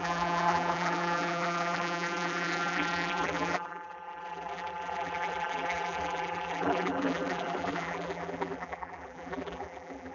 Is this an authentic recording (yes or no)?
no